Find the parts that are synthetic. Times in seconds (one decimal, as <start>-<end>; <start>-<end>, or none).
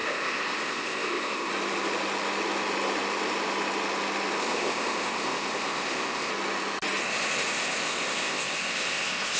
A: 0.0-1.5; 4.4-6.3; 7.0-9.4